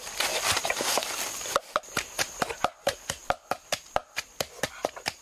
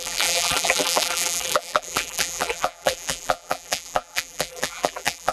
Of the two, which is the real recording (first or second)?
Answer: first